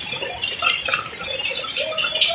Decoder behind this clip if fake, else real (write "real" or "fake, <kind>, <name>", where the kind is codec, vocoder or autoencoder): fake, vocoder, BigVGAN v2